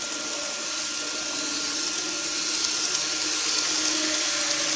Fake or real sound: real